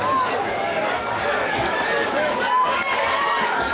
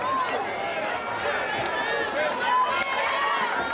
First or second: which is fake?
first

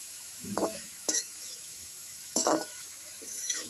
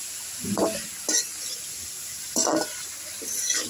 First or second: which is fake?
first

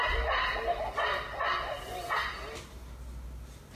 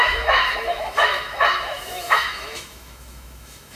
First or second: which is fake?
second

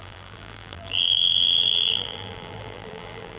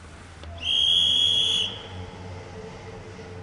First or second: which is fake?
first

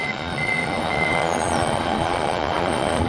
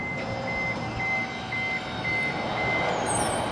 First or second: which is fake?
first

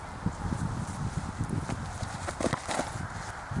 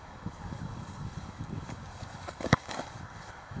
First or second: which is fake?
second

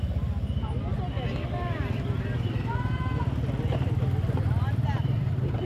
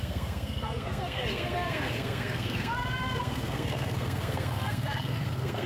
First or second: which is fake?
second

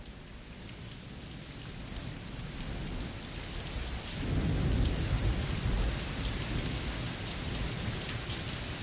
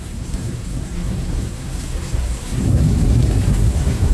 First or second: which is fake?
second